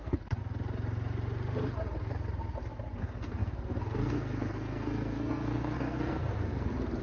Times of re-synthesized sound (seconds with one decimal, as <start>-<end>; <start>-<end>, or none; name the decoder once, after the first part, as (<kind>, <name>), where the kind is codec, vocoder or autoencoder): 0.0-0.4 (codec, SNAC); 3.0-7.0